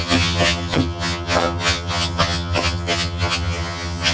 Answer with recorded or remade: remade